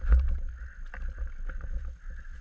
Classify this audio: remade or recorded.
recorded